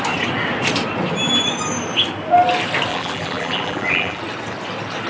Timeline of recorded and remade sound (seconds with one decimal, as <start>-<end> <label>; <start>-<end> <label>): 0.0-2.9 recorded; 2.9-4.2 remade; 4.2-5.1 recorded